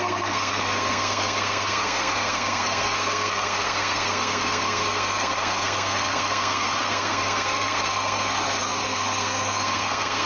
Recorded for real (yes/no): no